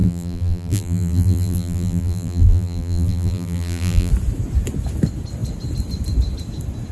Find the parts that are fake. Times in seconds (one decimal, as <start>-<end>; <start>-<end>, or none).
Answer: 0.0-4.1